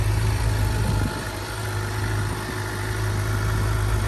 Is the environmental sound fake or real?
real